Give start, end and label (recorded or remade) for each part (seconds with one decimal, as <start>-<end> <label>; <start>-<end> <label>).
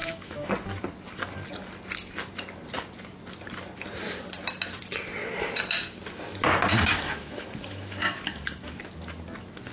0.0-0.5 remade; 0.5-6.9 recorded; 6.9-8.8 remade; 8.8-9.7 recorded